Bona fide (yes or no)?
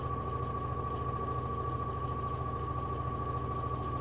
yes